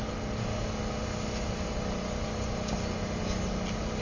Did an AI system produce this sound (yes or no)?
no